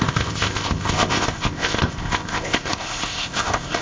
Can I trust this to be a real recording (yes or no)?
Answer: no